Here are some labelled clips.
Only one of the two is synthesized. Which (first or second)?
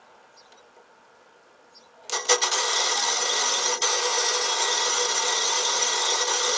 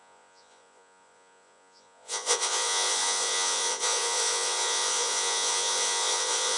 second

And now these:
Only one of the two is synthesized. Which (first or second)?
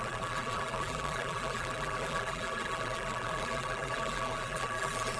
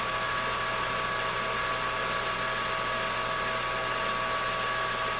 first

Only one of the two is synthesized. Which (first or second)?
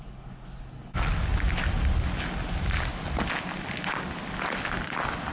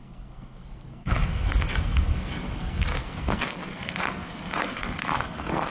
second